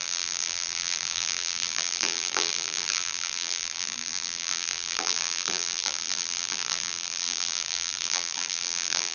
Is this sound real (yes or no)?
no